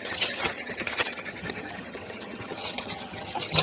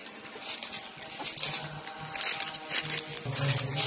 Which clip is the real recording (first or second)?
second